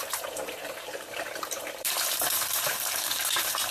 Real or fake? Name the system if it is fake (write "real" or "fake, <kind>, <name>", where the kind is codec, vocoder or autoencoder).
fake, vocoder, BigVGAN v2